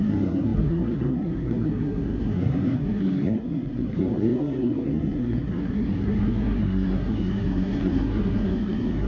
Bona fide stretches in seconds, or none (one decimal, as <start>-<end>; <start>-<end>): none